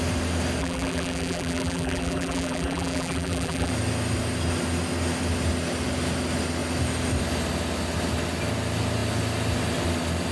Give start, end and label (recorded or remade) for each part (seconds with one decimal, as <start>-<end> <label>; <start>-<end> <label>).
0.0-0.6 recorded; 0.6-3.7 remade; 3.7-10.3 recorded